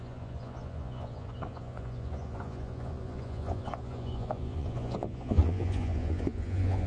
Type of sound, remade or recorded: remade